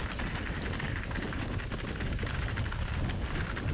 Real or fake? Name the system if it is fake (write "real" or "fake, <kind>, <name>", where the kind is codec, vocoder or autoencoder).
real